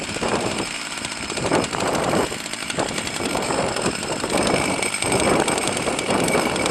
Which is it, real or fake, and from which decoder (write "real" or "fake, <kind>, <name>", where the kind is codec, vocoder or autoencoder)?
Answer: fake, vocoder, BigVGAN v2